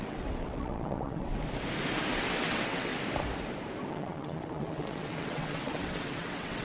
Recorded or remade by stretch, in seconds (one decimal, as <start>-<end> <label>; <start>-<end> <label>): 0.0-1.3 remade; 1.3-2.4 recorded; 2.4-2.9 remade; 2.9-3.9 recorded; 3.9-6.6 remade